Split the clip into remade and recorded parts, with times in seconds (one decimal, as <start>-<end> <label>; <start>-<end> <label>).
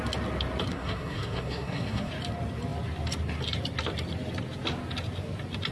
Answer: 0.0-0.7 recorded; 0.7-2.1 remade; 2.1-5.7 recorded